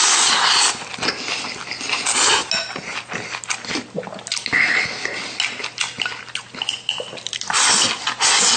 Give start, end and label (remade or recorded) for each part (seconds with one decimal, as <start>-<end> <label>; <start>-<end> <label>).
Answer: 0.0-8.6 recorded